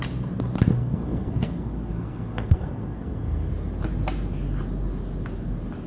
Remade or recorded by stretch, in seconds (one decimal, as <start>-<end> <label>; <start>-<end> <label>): 0.0-0.7 recorded; 0.7-3.5 remade; 3.5-5.9 recorded